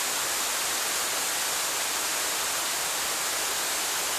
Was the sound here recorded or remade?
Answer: recorded